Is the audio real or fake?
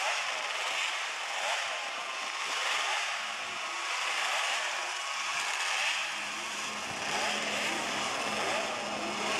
real